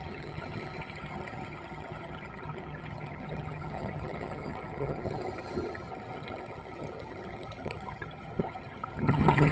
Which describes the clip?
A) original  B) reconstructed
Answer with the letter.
B